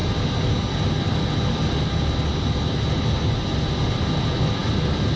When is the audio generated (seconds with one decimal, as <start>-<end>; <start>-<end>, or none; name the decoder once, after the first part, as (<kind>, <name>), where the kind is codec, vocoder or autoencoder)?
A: none

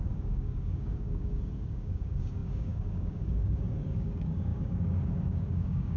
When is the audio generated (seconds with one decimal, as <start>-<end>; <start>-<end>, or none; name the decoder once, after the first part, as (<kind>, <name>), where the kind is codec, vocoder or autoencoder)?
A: 0.0-6.0 (codec, DAC)

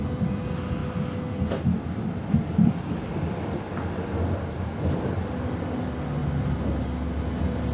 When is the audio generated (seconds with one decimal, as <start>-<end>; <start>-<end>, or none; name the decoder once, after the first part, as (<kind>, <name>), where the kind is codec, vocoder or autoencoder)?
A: none

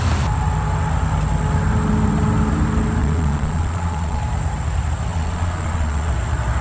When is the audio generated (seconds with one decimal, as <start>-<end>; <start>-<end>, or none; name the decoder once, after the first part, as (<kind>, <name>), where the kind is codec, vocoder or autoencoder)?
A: 3.0-4.2 (vocoder, Vocos); 5.1-6.1

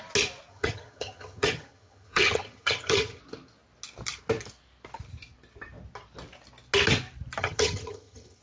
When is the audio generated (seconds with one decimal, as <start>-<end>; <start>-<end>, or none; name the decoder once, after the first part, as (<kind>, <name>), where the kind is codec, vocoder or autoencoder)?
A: 0.5-3.2 (vocoder, HiFi-GAN); 7.4-8.4

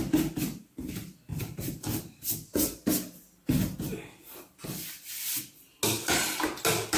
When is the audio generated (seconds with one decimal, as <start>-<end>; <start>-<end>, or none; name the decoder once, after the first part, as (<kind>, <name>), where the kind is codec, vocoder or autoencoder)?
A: 1.3-5.5 (vocoder, BigVGAN v2)

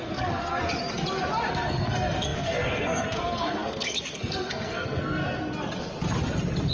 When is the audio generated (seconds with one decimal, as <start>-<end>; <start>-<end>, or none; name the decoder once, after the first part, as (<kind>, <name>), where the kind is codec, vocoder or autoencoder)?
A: 0.0-0.6 (codec, SNAC); 1.5-5.2